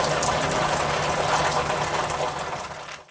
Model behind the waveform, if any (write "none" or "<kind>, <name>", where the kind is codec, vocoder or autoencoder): none